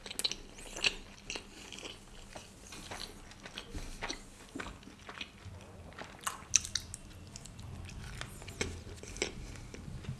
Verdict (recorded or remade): recorded